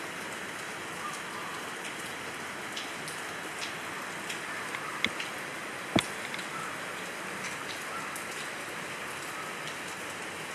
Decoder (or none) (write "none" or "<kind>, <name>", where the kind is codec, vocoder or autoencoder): none